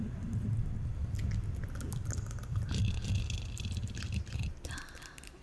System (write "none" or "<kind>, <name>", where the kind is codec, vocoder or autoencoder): vocoder, BigVGAN v2